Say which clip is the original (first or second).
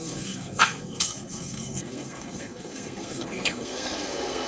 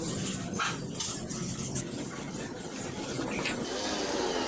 second